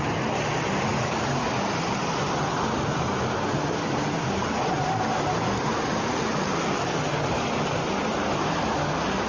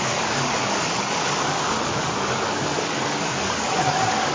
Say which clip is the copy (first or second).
second